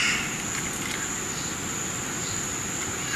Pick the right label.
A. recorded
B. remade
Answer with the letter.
A